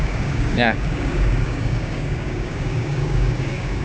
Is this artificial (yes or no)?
yes